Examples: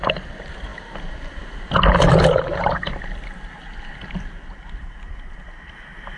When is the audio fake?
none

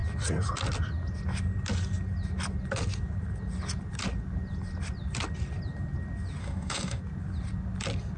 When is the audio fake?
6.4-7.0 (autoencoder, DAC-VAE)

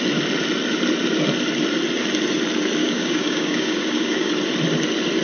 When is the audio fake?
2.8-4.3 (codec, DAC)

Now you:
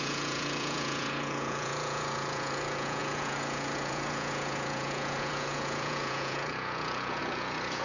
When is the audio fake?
0.0-7.8 (vocoder, Vocos)